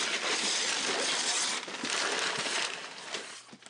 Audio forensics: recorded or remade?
recorded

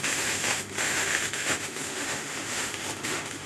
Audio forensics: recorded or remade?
remade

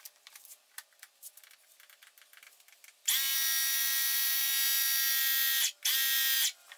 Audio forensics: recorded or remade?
recorded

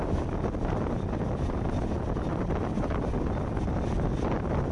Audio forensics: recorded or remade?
recorded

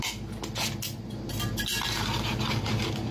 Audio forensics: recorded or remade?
recorded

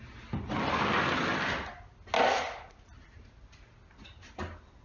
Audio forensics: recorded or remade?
recorded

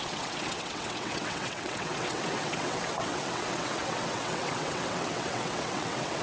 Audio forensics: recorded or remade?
remade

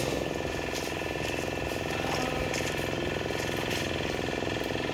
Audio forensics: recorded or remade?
recorded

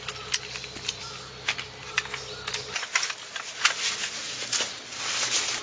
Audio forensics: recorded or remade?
recorded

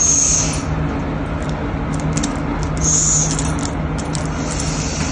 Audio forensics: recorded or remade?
recorded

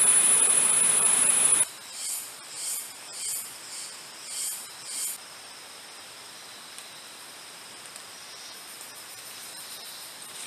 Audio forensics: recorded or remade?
recorded